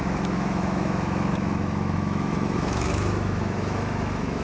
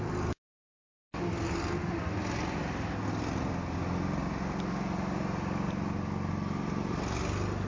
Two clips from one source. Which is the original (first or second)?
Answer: second